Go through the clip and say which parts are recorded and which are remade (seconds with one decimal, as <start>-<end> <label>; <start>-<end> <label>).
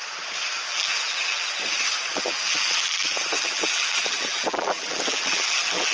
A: 0.0-0.7 recorded; 0.7-1.6 remade; 1.6-2.1 recorded; 2.1-5.9 remade